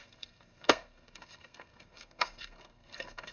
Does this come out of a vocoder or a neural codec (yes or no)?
yes